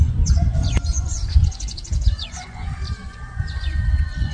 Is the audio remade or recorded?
remade